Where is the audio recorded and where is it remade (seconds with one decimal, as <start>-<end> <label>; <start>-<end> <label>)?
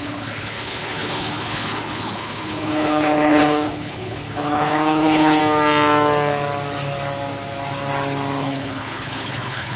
0.0-5.4 remade; 5.4-8.4 recorded; 8.4-9.8 remade